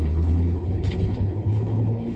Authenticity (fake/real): fake